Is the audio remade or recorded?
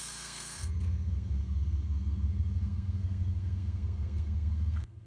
remade